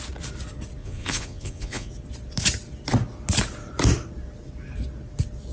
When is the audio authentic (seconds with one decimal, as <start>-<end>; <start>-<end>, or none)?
0.0-0.8; 1.9-5.5